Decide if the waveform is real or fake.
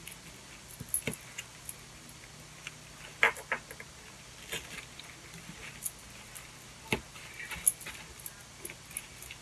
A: real